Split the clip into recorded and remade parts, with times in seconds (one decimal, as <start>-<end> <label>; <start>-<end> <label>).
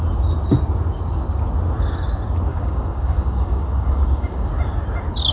0.0-2.5 recorded; 2.5-4.5 remade; 4.5-5.3 recorded